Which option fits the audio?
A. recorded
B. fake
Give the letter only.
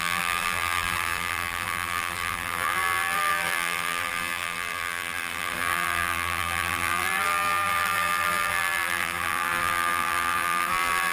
B